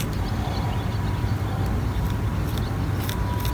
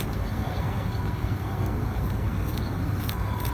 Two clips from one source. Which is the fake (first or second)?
second